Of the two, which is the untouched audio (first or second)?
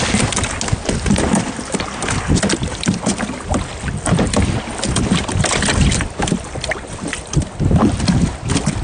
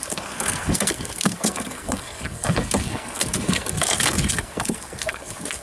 first